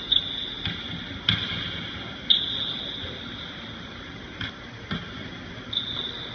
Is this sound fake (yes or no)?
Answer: no